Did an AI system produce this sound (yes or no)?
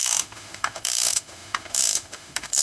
yes